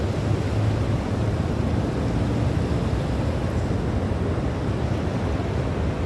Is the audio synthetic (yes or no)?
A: no